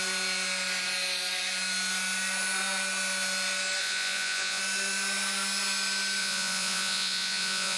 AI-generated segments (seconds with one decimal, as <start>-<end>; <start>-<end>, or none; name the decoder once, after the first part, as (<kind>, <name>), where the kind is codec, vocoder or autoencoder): 3.8-4.6 (vocoder, Vocos); 6.2-7.8